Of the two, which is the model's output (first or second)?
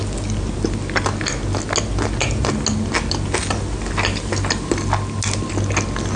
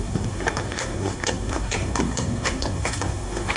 second